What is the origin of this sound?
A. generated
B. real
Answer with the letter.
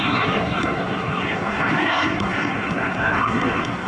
A